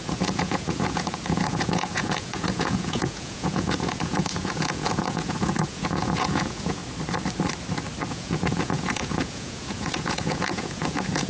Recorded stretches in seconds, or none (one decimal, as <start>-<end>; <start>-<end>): 6.8-8.1